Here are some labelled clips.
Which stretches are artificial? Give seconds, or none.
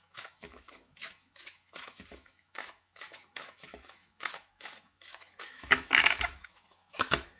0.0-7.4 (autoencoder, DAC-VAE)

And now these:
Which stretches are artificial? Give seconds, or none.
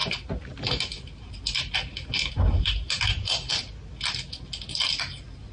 none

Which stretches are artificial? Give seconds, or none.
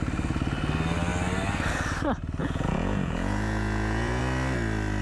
2.4-4.2 (vocoder, Vocos)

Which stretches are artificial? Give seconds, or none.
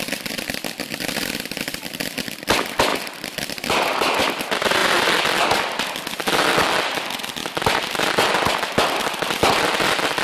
2.9-4.2 (vocoder, BigVGAN v2)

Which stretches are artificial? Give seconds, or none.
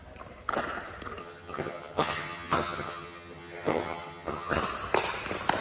1.2-4.6 (vocoder, HiFi-GAN)